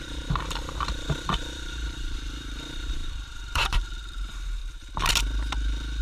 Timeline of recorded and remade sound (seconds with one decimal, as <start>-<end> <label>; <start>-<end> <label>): 0.0-4.6 remade; 4.6-6.0 recorded